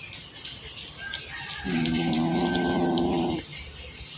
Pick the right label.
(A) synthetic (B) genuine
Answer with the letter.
B